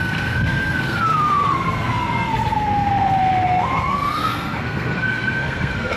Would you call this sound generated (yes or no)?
yes